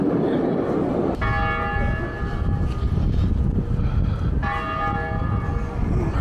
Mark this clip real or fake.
real